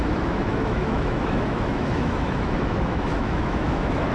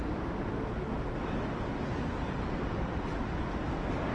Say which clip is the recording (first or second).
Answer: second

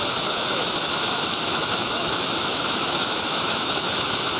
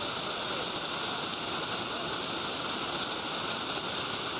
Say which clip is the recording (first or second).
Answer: second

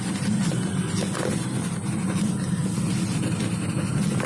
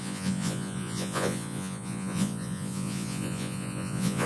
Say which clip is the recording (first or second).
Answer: first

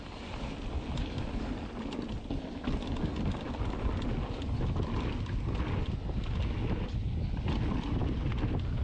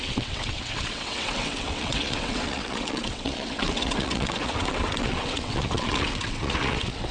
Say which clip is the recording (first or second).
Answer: first